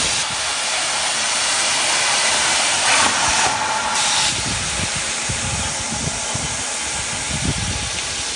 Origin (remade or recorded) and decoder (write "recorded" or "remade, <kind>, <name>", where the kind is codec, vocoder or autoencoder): recorded